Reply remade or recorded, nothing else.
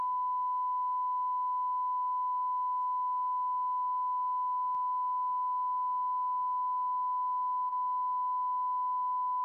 recorded